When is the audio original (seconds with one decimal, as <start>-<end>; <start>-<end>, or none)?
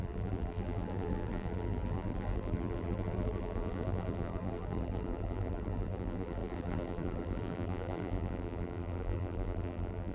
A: none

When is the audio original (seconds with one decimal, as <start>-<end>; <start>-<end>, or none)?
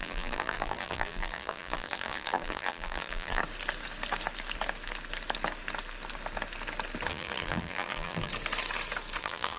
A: 3.4-7.1; 8.3-9.2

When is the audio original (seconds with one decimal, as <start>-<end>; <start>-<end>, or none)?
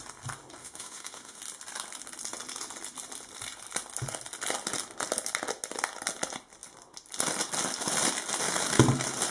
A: 0.0-0.6; 1.4-9.3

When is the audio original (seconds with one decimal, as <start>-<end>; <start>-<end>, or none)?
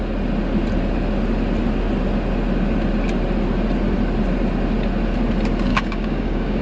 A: 0.0-5.7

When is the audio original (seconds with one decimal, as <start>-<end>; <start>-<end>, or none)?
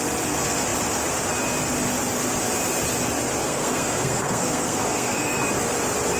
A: 0.0-3.4; 5.4-6.2